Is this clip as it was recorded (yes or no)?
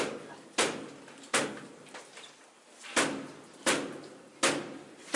yes